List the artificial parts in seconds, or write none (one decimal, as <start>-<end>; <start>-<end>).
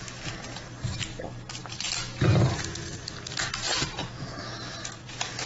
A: none